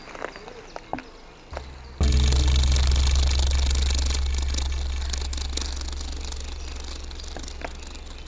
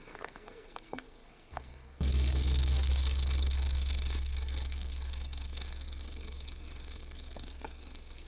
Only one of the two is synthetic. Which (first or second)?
second